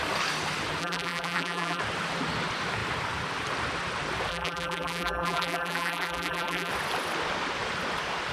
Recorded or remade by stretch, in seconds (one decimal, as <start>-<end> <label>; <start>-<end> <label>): 0.0-0.8 recorded; 0.8-1.8 remade; 1.8-4.3 recorded; 4.3-6.7 remade; 6.7-8.3 recorded